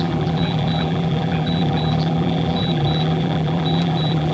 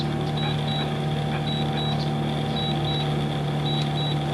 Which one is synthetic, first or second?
first